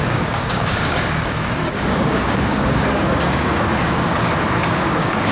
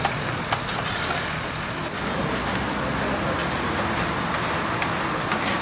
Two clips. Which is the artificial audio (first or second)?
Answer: first